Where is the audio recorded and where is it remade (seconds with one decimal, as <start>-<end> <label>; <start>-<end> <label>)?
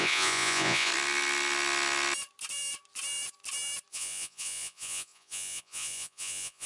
0.0-0.9 remade; 0.9-3.9 recorded; 3.9-6.7 remade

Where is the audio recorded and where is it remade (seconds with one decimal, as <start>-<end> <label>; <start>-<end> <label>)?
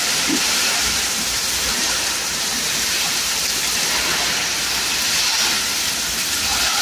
0.0-3.4 remade; 3.4-6.8 recorded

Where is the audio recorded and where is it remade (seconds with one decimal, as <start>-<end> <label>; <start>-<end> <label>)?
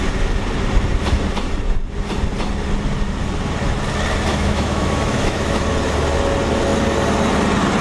0.0-4.3 recorded; 4.3-5.6 remade; 5.6-7.8 recorded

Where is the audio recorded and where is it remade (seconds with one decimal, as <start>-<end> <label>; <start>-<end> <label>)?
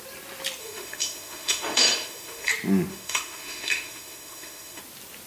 0.0-0.6 recorded; 0.6-2.5 remade; 2.5-2.9 recorded; 2.9-4.8 remade; 4.8-5.3 recorded